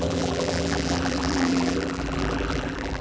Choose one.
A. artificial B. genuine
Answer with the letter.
A